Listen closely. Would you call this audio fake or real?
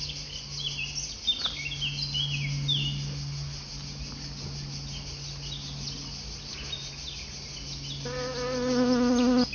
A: real